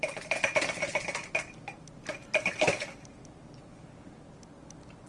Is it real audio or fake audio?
real